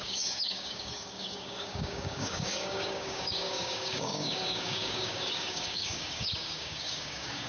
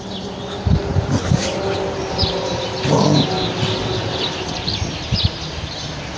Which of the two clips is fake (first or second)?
first